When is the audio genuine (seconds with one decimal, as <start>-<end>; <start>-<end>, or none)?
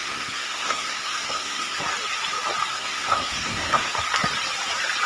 1.8-2.7; 4.1-5.1